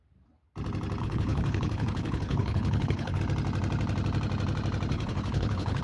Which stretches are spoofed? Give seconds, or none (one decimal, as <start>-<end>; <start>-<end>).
1.0-3.2; 4.9-5.8